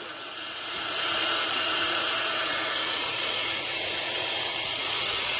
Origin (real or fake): fake